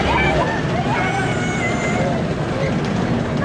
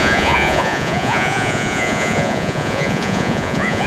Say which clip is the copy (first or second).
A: second